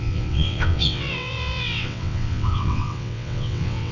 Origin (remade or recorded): remade